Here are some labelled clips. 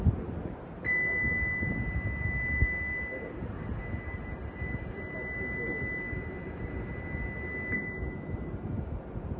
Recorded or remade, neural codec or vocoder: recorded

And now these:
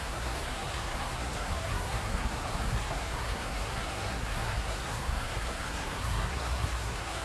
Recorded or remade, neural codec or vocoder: remade, codec, SNAC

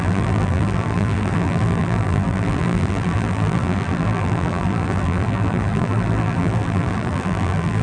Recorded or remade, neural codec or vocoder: remade, vocoder, BigVGAN v2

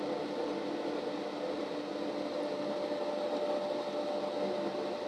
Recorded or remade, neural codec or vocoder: recorded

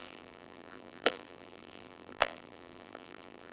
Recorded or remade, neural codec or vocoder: remade, vocoder, BigVGAN v2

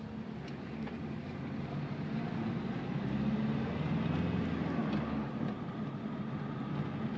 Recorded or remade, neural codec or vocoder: recorded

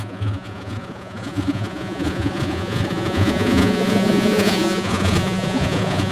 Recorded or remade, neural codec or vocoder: remade, vocoder, Vocos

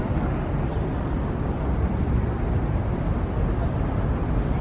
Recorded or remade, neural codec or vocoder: recorded